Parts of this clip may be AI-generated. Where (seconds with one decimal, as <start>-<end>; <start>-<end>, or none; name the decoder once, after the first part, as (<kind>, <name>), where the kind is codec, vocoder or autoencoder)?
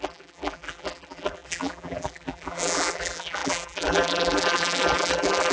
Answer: 0.0-5.5 (vocoder, BigVGAN v2)